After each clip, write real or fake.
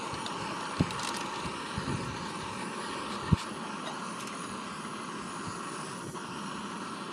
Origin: real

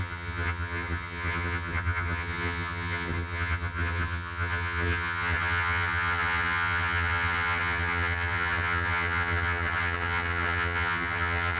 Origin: fake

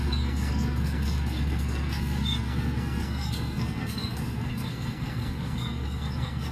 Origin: fake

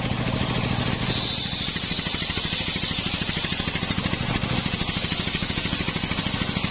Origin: real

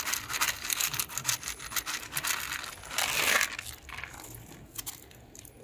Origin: real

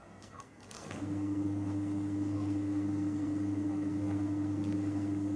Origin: fake